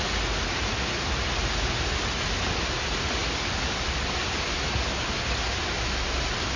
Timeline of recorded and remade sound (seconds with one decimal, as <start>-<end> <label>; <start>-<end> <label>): 0.0-6.6 recorded